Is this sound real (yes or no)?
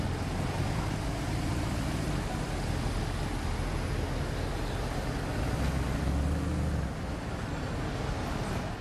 yes